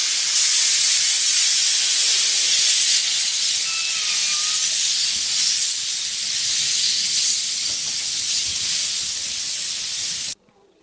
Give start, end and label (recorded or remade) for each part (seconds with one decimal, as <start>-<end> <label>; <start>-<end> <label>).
0.0-0.7 remade; 0.7-8.5 recorded; 8.5-10.8 remade